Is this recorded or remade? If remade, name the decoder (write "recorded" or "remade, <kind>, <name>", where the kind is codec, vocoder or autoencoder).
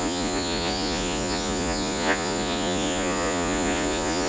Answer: remade, vocoder, Vocos